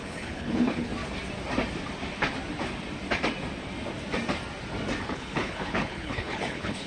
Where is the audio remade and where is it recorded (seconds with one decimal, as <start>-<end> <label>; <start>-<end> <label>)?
0.0-0.9 remade; 0.9-5.0 recorded; 5.0-6.9 remade